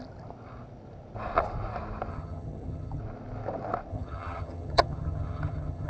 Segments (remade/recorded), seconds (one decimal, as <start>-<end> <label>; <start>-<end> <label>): 0.0-2.1 recorded; 2.1-3.0 remade; 3.0-3.9 recorded; 3.9-5.9 remade